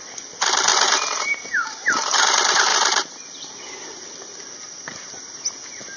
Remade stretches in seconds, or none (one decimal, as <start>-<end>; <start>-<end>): none